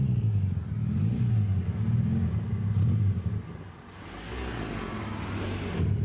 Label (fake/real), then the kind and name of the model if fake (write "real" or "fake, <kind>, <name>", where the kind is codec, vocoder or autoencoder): real